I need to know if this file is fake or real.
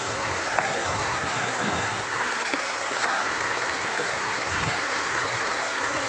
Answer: fake